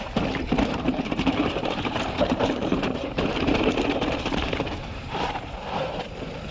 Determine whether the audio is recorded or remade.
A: remade